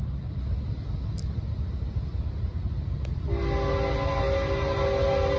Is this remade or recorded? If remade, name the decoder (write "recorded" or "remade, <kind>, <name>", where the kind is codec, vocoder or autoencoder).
recorded